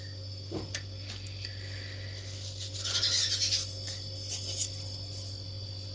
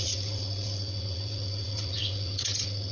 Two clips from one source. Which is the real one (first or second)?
first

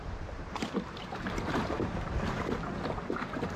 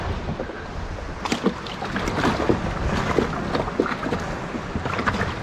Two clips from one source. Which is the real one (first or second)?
second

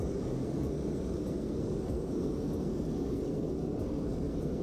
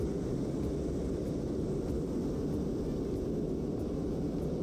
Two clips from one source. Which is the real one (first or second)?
second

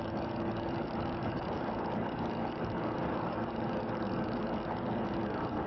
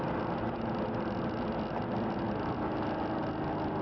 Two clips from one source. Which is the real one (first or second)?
second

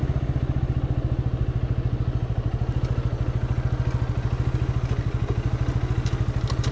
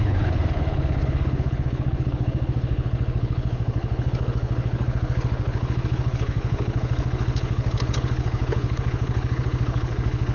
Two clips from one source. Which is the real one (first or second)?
first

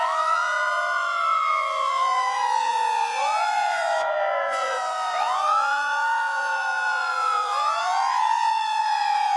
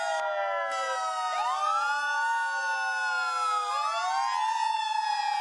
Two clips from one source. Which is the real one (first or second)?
second